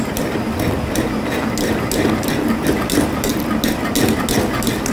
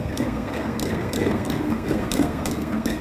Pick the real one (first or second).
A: first